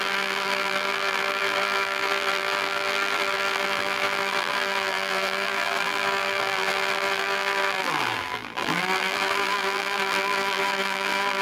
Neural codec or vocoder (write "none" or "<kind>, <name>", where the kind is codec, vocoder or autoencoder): vocoder, BigVGAN v2